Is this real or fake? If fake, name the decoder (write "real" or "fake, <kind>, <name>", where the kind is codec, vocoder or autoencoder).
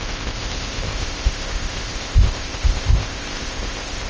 fake, codec, ZipCodec